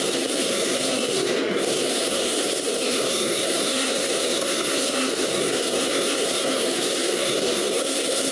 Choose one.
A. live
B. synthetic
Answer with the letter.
B